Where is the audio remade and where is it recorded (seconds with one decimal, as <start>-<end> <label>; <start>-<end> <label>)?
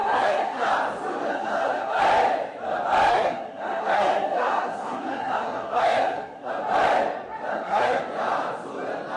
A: 0.0-0.7 remade; 0.7-1.3 recorded; 1.3-2.0 remade; 2.0-3.1 recorded; 3.1-6.5 remade; 6.5-7.5 recorded; 7.5-8.0 remade; 8.0-9.2 recorded